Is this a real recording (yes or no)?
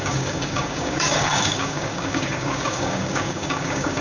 no